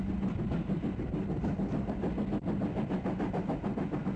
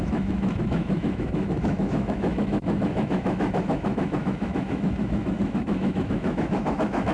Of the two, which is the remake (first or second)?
second